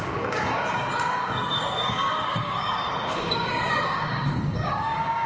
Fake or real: fake